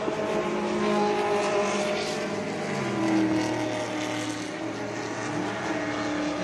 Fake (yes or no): no